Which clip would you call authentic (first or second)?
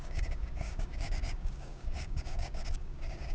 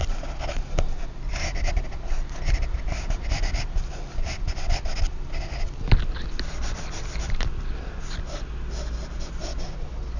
second